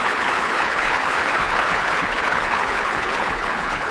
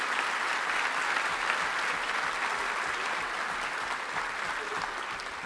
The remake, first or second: first